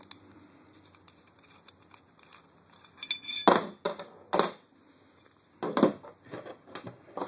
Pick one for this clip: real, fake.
real